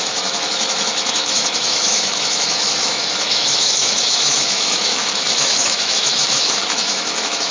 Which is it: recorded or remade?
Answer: remade